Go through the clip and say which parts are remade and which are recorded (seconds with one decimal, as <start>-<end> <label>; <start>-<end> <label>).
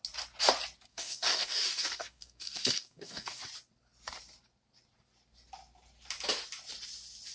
0.0-0.9 recorded; 0.9-3.4 remade; 3.4-7.3 recorded